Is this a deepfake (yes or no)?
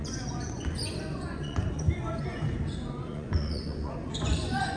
yes